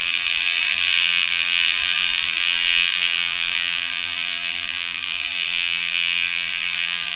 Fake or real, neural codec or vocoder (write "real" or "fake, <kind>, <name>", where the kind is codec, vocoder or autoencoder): fake, vocoder, BigVGAN v2